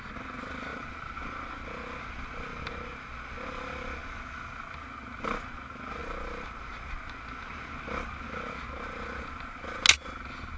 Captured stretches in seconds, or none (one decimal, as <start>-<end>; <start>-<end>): 0.0-10.6